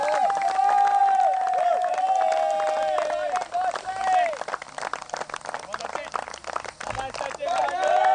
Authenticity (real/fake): real